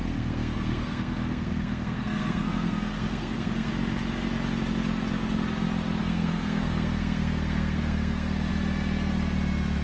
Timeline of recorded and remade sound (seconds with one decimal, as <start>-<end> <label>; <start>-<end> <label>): 0.0-3.7 remade; 3.7-6.0 recorded; 6.0-8.5 remade; 8.5-9.8 recorded

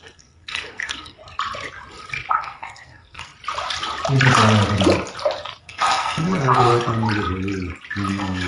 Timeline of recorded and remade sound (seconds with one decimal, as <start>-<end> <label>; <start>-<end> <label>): 0.0-1.2 remade; 1.2-2.3 recorded; 2.3-3.3 remade; 3.3-5.6 recorded; 5.6-6.7 remade; 6.7-8.1 recorded; 8.1-8.5 remade

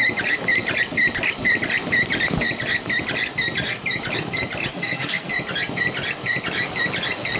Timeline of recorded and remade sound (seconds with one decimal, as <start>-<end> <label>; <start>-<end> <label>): 0.0-4.7 recorded; 4.7-5.3 remade; 5.3-7.4 recorded